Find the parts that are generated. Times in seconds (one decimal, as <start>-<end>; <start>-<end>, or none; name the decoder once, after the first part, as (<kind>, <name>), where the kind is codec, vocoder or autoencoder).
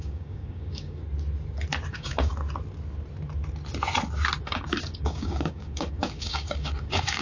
0.0-1.0 (codec, DAC); 1.9-2.3; 4.4-7.2